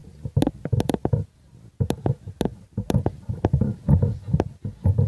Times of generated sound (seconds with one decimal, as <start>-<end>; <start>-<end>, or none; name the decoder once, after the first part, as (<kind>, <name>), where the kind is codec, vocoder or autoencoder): none